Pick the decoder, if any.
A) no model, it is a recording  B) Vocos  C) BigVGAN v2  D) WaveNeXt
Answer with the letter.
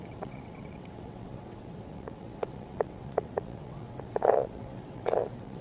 D